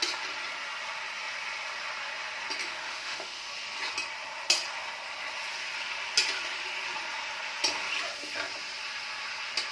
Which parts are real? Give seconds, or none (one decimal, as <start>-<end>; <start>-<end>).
0.0-2.6; 3.5-9.7